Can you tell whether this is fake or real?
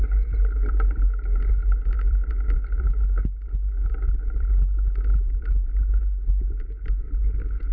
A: real